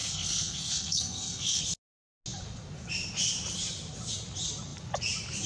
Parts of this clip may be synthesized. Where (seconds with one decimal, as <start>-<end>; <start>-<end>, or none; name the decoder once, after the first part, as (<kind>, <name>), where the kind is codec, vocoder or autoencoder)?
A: 0.0-1.6 (codec, SNAC)